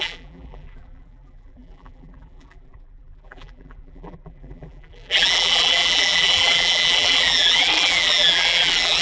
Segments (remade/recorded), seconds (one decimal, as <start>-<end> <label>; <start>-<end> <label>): 0.0-9.0 remade

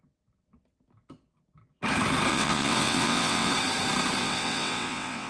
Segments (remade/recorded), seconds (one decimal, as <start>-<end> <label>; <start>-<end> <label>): 0.0-2.3 recorded; 2.3-3.5 remade; 3.5-4.2 recorded; 4.2-5.3 remade

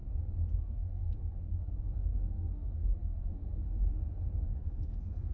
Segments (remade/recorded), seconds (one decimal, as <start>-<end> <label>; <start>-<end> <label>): 0.0-0.6 recorded; 0.6-3.6 remade; 3.6-4.4 recorded; 4.4-5.3 remade

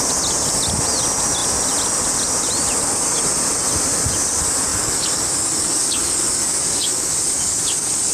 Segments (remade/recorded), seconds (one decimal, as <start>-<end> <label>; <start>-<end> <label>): 0.0-4.7 recorded; 4.7-8.1 remade

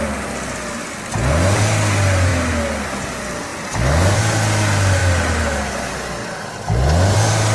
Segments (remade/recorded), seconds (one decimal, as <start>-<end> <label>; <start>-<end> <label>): 0.0-7.5 recorded

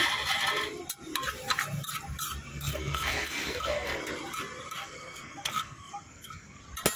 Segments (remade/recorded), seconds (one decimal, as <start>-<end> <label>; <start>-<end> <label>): 0.0-2.5 recorded; 2.5-4.0 remade; 4.0-4.8 recorded; 4.8-6.6 remade; 6.6-7.0 recorded

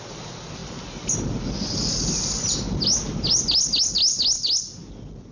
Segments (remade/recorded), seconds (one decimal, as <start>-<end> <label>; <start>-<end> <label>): 0.0-5.3 recorded

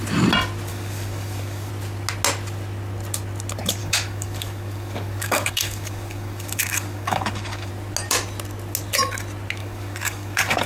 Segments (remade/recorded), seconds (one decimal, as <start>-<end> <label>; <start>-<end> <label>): 0.0-0.7 recorded; 0.7-1.7 remade; 1.7-3.8 recorded; 3.8-7.7 remade; 7.7-9.6 recorded; 9.6-10.7 remade